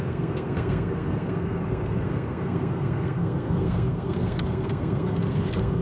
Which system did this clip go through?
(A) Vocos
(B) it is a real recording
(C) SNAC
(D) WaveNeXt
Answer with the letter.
C